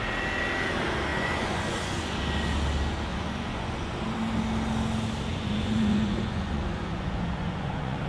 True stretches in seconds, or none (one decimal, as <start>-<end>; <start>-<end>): 0.0-1.1; 2.2-3.1; 4.0-5.3